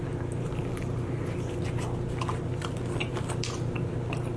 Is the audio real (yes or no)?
yes